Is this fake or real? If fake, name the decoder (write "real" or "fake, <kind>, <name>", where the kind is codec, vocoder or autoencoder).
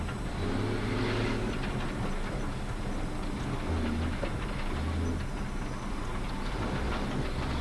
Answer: real